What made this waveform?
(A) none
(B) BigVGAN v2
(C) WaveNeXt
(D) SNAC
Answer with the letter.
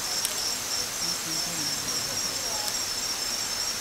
A